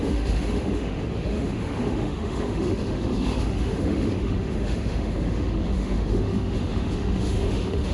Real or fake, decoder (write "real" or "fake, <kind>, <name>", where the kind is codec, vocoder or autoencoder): fake, autoencoder, DAC-VAE